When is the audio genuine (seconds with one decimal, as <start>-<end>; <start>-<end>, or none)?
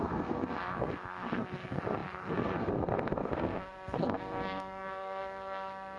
none